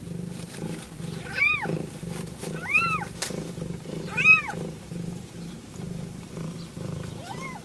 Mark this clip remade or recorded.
remade